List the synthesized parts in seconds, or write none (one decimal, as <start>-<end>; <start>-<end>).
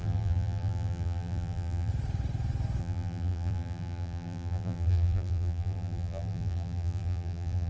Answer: 0.0-1.9; 2.8-7.7